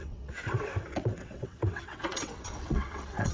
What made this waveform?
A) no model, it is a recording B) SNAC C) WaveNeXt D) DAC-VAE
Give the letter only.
C